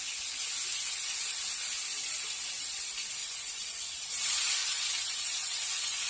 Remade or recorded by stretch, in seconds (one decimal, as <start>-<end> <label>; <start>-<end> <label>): 0.0-3.2 recorded; 3.2-4.1 remade; 4.1-4.6 recorded; 4.6-6.1 remade